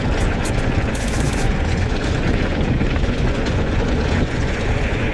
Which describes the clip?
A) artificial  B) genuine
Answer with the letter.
A